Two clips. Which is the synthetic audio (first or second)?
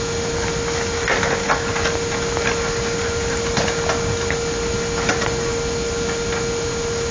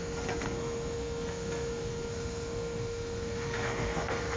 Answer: second